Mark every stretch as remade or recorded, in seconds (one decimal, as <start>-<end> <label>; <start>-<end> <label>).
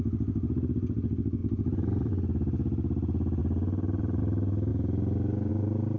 0.0-1.4 recorded; 1.4-2.1 remade; 2.1-3.4 recorded; 3.4-4.2 remade; 4.2-6.0 recorded